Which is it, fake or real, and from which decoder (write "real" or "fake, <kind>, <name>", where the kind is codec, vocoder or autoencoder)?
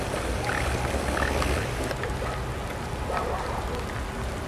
real